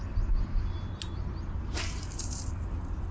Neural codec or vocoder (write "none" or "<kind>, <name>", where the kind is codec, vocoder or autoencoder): none